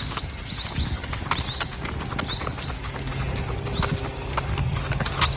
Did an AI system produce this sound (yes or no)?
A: no